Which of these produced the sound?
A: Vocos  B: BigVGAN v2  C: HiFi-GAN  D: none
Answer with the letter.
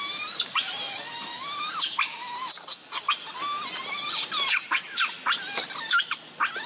D